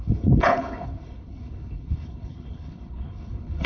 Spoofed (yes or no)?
yes